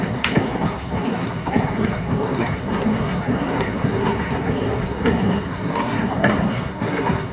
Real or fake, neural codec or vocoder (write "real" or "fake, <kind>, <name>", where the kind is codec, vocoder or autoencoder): fake, codec, SNAC